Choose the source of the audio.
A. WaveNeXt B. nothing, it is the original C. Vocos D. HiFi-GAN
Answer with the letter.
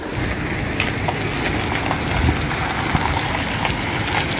B